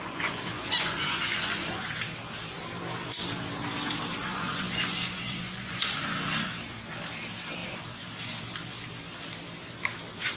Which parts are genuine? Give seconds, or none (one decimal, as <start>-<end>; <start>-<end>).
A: 1.9-4.2; 6.0-10.4